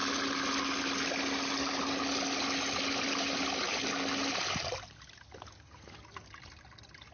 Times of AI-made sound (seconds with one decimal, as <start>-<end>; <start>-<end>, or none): none